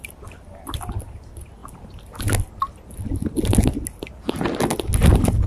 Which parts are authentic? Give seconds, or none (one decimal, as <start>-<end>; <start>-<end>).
0.0-5.5